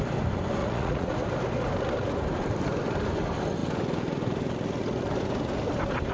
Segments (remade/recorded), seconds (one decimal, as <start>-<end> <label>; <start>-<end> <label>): 0.0-0.6 recorded; 0.6-1.1 remade; 1.1-6.1 recorded